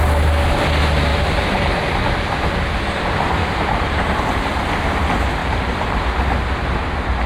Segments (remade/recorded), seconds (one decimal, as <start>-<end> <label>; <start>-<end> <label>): 0.0-1.1 recorded; 1.1-2.1 remade; 2.1-3.4 recorded; 3.4-4.2 remade; 4.2-5.4 recorded; 5.4-6.0 remade; 6.0-7.3 recorded